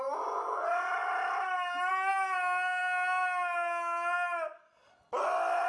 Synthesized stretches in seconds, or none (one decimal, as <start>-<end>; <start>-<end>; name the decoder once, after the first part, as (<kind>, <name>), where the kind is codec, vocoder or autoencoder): none

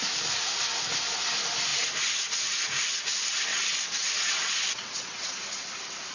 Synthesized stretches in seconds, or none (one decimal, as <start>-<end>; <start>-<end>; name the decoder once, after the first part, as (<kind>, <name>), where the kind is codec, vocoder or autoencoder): 3.5-5.4 (vocoder, WaveNeXt)